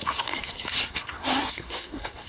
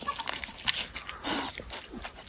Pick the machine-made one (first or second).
first